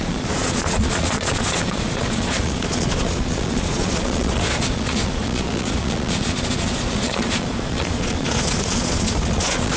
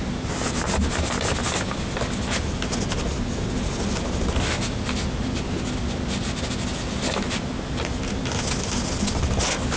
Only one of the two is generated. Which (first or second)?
first